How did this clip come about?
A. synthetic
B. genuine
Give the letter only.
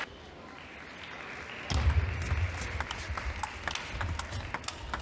B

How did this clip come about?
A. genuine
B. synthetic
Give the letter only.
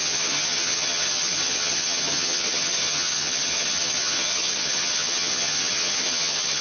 B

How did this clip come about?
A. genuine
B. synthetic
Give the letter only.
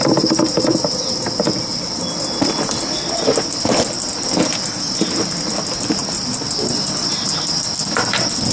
A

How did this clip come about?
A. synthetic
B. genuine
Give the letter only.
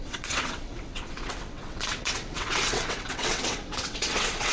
A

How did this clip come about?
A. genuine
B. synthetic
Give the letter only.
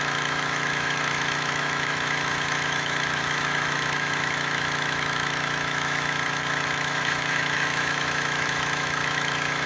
B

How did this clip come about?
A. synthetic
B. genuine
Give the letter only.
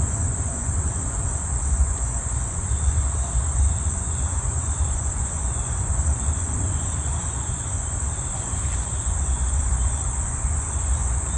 A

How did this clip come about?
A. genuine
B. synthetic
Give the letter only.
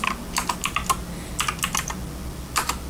A